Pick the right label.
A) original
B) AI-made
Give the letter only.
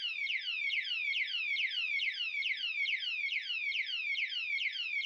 A